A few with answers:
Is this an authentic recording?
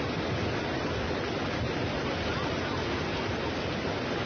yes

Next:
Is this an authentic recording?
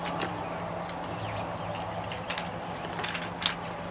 yes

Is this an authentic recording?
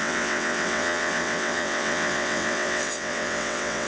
no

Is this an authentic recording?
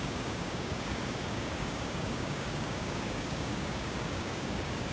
no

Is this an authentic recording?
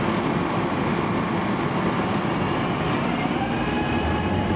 yes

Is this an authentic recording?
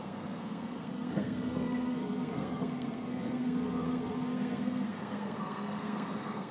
no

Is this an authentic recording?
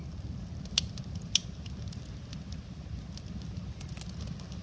yes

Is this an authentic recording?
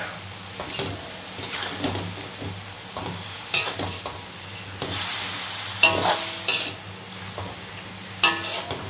yes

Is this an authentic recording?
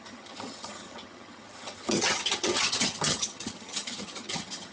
no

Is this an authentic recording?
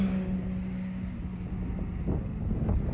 yes